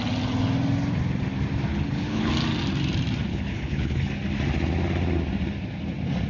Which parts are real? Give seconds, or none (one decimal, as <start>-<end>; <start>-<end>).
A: 0.0-1.7; 2.3-3.3; 4.1-6.3